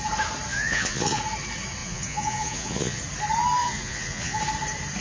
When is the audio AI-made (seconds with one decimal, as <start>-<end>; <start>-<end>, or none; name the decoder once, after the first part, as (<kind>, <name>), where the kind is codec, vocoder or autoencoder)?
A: 0.5-1.2 (vocoder, Vocos); 1.8-3.0; 3.6-4.4